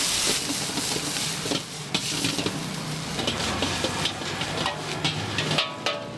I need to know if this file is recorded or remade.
recorded